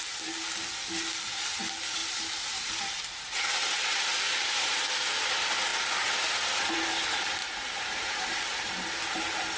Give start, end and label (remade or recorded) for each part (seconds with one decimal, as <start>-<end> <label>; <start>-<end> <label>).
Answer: 0.0-2.0 recorded; 2.0-3.2 remade; 3.2-7.4 recorded; 7.4-9.2 remade; 9.2-9.6 recorded